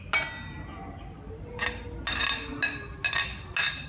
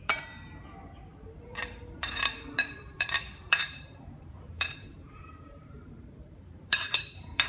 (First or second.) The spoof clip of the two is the second